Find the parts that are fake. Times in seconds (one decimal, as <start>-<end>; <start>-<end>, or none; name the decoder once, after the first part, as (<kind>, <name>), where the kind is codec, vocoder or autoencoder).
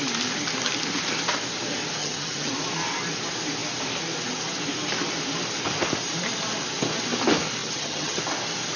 2.0-2.5 (vocoder, HiFi-GAN); 7.6-8.2